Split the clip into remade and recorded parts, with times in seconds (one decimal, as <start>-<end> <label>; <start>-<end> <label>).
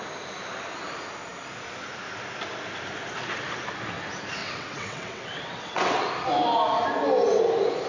0.0-4.4 recorded; 4.4-6.1 remade; 6.1-7.9 recorded